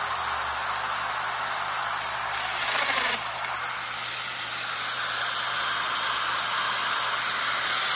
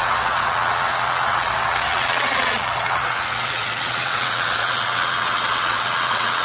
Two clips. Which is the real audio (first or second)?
first